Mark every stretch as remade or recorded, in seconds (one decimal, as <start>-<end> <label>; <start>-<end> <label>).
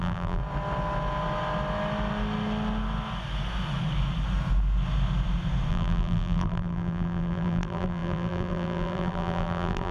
0.0-0.4 remade; 0.4-5.7 recorded; 5.7-9.9 remade